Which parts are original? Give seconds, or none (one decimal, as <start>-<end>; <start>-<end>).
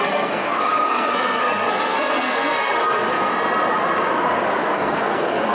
3.3-4.7